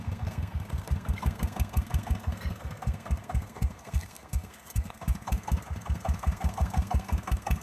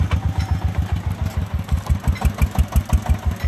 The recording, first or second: second